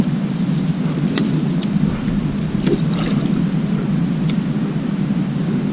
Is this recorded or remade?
recorded